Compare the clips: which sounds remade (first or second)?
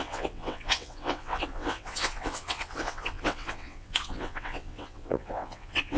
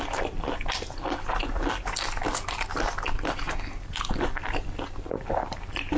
first